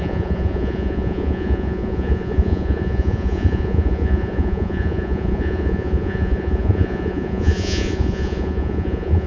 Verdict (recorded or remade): remade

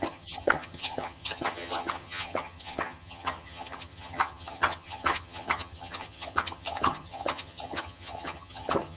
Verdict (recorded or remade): remade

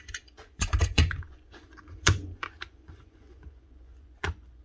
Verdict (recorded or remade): remade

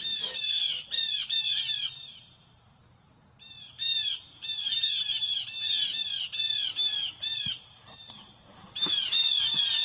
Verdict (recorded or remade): remade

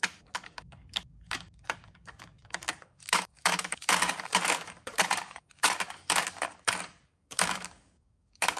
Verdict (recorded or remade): remade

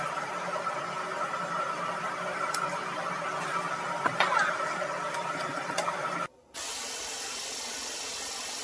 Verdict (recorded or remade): recorded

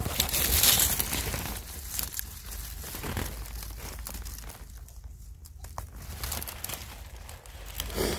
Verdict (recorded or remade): recorded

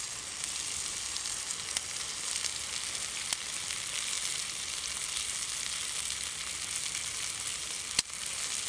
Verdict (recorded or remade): recorded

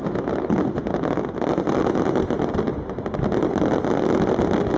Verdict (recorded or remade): recorded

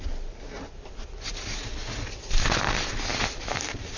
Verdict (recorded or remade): recorded